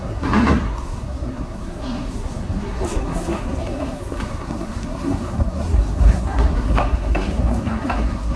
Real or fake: fake